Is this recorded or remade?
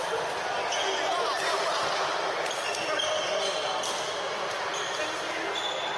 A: recorded